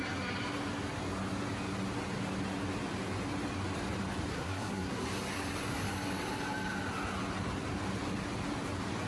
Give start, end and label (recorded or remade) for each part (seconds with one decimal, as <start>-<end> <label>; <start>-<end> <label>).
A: 0.0-4.3 recorded; 4.3-5.0 remade; 5.0-9.1 recorded